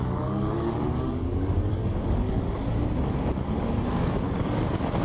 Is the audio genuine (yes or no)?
no